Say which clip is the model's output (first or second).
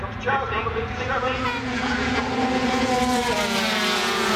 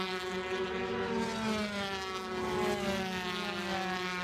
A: first